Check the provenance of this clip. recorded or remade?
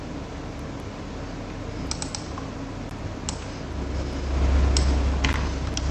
recorded